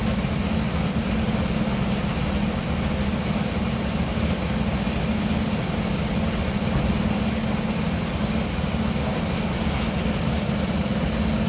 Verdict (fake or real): real